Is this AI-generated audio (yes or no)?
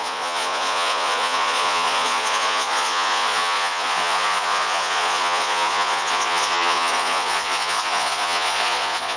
yes